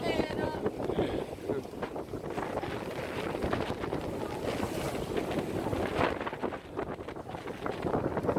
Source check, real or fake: real